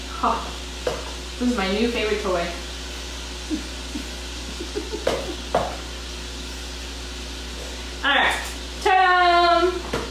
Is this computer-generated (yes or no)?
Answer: no